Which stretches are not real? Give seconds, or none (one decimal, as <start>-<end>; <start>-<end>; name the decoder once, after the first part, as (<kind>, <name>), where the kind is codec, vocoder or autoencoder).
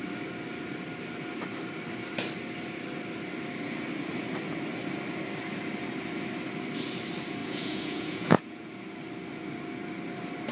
7.4-8.7 (vocoder, Vocos)